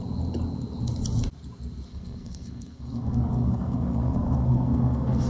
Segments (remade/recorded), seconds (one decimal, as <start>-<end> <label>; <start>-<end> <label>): 0.0-1.9 recorded; 1.9-5.3 remade